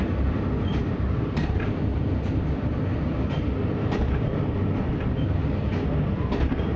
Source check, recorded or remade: remade